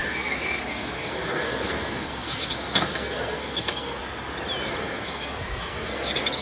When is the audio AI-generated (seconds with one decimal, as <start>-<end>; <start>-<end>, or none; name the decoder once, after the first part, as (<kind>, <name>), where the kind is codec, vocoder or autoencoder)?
0.0-4.0 (codec, SNAC); 4.8-6.4